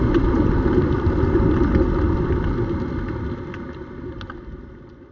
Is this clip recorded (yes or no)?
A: yes